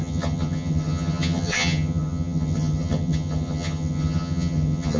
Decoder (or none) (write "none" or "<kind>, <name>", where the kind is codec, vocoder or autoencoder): vocoder, HiFi-GAN